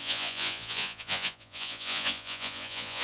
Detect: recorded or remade remade